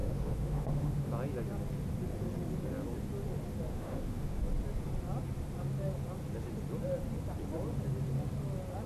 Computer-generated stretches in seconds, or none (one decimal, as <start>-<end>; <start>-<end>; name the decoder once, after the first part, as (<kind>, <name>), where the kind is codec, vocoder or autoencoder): 0.0-1.1 (autoencoder, DAC-VAE); 3.7-4.4